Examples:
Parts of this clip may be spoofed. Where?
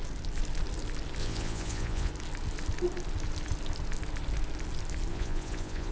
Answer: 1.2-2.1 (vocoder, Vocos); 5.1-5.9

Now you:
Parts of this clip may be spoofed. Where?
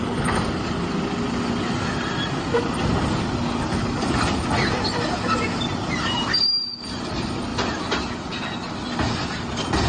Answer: none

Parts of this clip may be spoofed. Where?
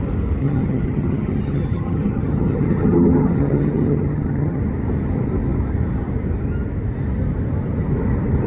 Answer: 0.4-4.6 (vocoder, HiFi-GAN)